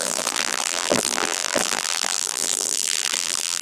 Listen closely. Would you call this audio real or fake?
fake